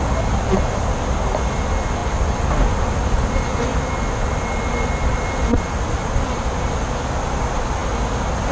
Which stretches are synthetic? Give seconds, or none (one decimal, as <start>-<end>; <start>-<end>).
none